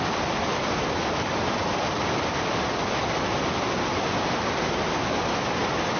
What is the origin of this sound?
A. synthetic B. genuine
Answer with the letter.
B